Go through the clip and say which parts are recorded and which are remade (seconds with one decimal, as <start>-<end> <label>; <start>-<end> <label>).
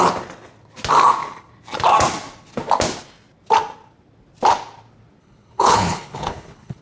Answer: 0.0-5.2 recorded; 5.2-6.8 remade